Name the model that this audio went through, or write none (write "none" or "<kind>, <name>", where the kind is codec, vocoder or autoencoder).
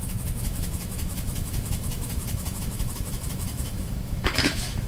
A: autoencoder, DAC-VAE